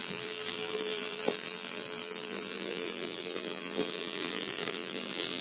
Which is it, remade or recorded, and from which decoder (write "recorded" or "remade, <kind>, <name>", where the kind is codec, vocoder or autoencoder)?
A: remade, vocoder, BigVGAN v2